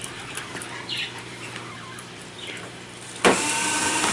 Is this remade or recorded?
remade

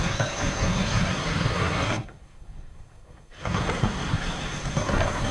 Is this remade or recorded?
remade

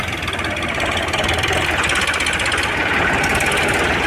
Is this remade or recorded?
recorded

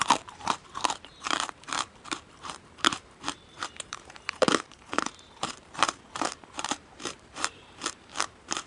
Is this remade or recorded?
remade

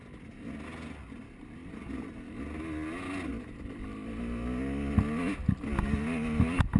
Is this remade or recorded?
recorded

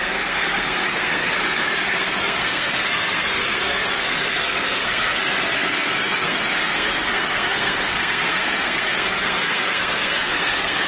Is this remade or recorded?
remade